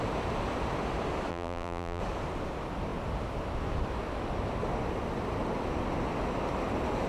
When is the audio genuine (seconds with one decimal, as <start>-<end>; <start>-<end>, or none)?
0.0-1.3; 2.0-7.1